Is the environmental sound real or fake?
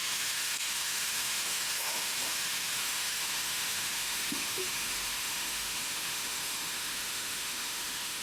fake